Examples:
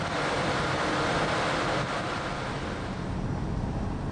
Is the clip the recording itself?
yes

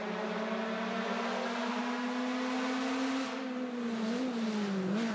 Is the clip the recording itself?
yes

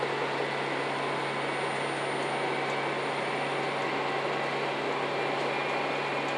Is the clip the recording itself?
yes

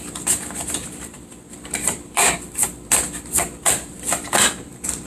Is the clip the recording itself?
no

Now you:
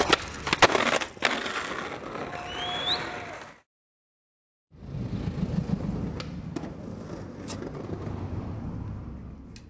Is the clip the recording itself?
yes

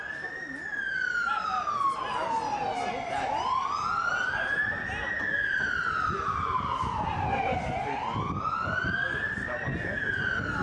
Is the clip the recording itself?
yes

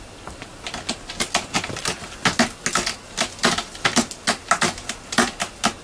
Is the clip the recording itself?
yes